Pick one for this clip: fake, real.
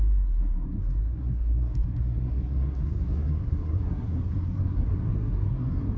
fake